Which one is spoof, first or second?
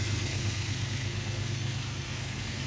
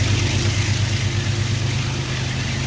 first